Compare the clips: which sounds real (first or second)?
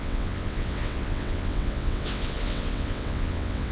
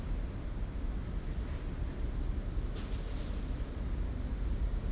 second